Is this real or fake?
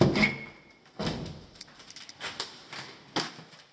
real